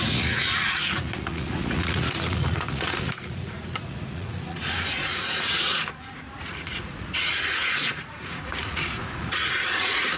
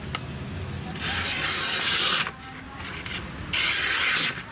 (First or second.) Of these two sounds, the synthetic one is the first